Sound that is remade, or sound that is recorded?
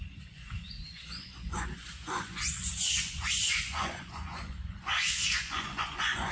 remade